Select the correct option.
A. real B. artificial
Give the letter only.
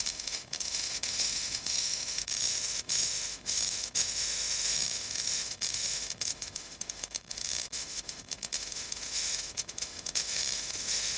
B